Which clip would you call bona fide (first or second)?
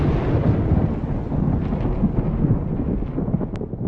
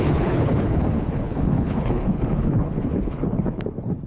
first